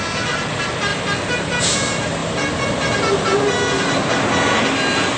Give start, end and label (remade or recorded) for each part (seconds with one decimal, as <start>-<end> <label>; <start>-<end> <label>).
0.0-5.2 recorded